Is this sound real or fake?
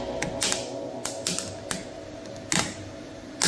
real